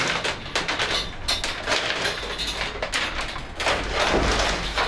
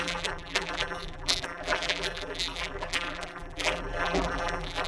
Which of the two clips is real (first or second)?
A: first